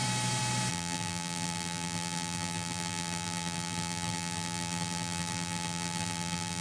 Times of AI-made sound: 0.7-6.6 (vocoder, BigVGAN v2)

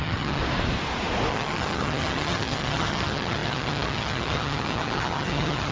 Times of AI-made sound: 0.0-0.4 (vocoder, HiFi-GAN); 1.3-5.7

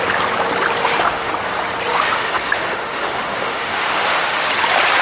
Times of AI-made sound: 0.8-1.3 (autoencoder, DAC-VAE); 1.9-4.5

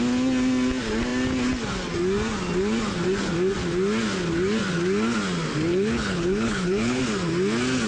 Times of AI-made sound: 5.7-7.0 (codec, HILCodec)